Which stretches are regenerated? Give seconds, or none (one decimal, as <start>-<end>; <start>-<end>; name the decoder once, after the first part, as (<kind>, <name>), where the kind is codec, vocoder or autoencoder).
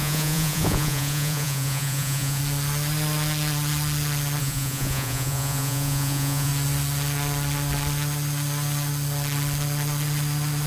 0.0-2.4 (vocoder, Vocos); 4.4-6.5